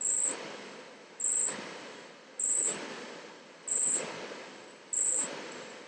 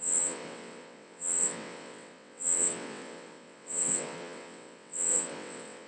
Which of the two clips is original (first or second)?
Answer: first